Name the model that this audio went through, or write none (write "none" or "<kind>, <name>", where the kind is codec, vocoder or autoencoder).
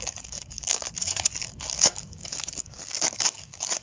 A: codec, DAC